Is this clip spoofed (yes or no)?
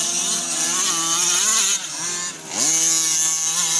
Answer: no